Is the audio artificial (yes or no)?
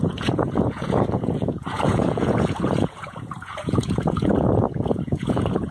yes